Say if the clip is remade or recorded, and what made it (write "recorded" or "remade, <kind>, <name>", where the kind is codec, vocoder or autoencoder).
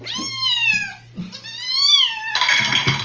recorded